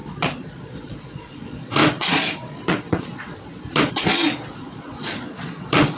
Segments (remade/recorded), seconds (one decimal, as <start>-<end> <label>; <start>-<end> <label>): 0.0-6.0 remade